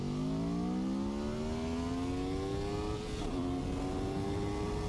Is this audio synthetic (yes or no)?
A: no